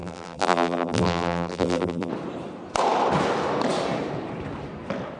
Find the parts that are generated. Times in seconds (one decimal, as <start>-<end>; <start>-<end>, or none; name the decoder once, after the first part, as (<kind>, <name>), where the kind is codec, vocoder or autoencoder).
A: 0.0-2.1 (vocoder, BigVGAN v2)